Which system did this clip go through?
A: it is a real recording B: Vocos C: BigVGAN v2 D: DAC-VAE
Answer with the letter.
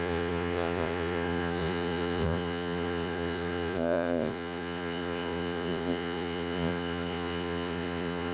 B